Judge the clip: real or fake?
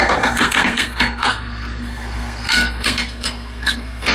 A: fake